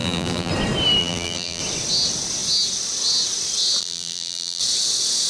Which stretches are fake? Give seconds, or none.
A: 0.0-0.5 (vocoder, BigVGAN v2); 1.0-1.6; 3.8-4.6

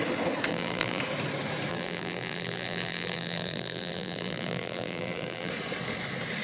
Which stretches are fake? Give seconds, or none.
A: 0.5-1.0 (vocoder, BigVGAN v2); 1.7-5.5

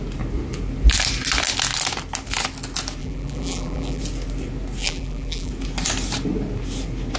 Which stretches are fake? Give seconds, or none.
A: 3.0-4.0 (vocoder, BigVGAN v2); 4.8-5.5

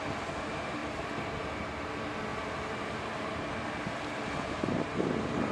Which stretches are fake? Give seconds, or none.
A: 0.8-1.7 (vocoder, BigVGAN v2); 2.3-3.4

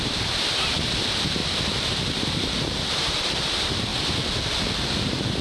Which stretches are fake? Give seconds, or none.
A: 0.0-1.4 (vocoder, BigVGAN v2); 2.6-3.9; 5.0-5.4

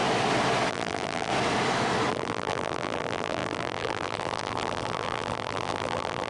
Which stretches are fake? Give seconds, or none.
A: 0.7-1.3 (vocoder, BigVGAN v2); 2.1-6.3